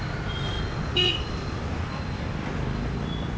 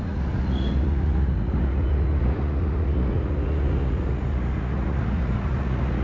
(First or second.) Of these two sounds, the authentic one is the first